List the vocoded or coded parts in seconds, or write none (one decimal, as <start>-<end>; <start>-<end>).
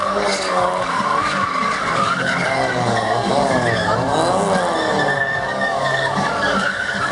0.0-4.2; 5.2-7.1